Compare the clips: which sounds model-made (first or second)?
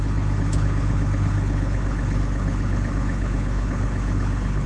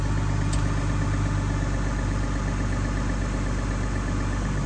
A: first